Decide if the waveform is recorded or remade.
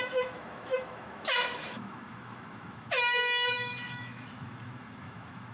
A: remade